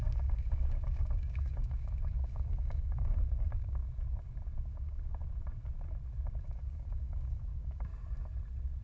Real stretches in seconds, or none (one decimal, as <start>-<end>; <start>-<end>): 3.8-4.6; 5.2-6.4; 7.9-8.8